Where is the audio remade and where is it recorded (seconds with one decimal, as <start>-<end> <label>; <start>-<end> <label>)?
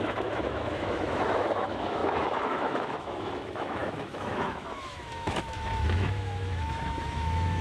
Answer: 0.0-7.6 remade